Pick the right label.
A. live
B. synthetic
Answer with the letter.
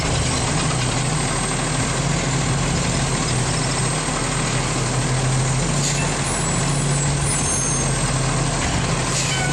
A